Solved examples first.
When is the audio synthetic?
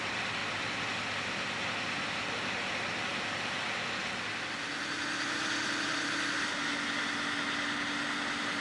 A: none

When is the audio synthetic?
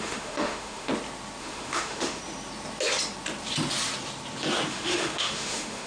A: 0.0-0.9 (autoencoder, DAC-VAE); 1.4-2.2; 4.7-5.9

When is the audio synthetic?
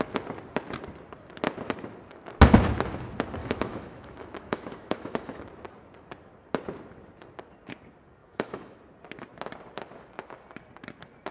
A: 3.4-5.4 (autoencoder, DAC-VAE); 8.2-8.8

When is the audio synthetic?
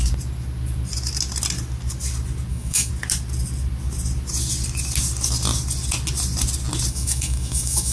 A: 2.5-2.9 (autoencoder, DAC-VAE); 6.9-7.9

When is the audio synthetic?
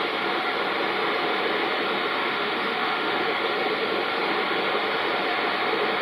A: 2.2-3.4 (autoencoder, DAC-VAE)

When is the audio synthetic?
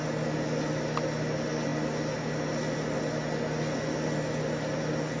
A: none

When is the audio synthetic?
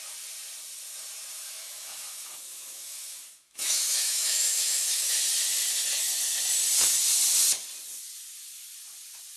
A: 1.3-5.1 (autoencoder, DAC-VAE)